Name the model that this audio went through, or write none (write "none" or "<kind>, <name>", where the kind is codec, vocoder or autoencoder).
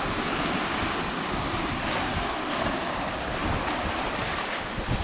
none